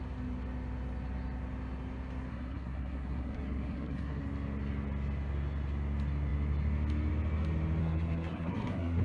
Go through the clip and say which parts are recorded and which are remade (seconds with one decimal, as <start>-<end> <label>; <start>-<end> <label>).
0.0-2.3 recorded; 2.3-4.2 remade; 4.2-7.8 recorded; 7.8-9.0 remade

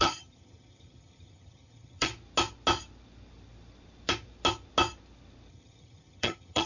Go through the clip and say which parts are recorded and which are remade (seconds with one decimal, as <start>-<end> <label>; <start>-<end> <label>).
0.0-2.1 remade; 2.1-5.5 recorded; 5.5-6.7 remade

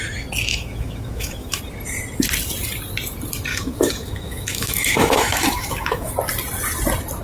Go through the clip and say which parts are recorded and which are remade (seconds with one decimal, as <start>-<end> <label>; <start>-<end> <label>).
0.0-0.5 recorded; 0.5-1.6 remade; 1.6-3.5 recorded; 3.5-6.1 remade; 6.1-7.2 recorded